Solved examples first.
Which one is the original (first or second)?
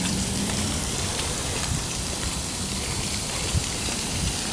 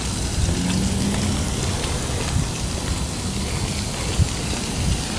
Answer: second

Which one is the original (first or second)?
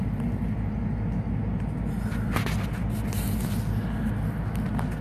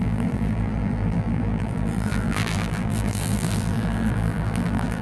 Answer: first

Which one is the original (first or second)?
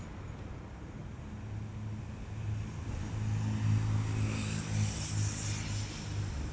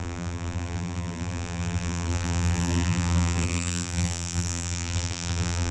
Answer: first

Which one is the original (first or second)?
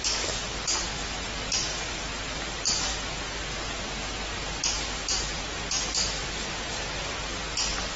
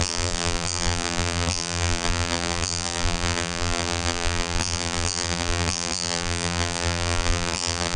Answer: first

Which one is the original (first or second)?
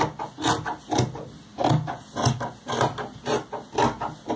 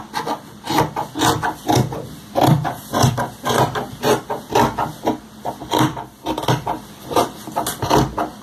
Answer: first